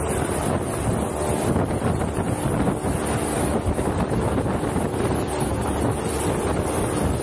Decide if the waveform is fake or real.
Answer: real